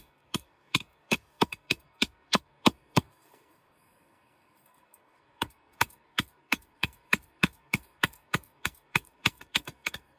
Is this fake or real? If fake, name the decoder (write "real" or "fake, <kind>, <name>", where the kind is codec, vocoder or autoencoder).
fake, codec, SNAC